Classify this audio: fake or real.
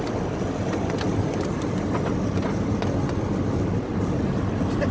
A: real